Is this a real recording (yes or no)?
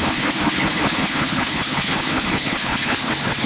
no